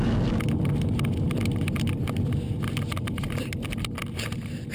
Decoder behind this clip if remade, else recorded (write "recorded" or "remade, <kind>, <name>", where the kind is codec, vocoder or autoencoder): recorded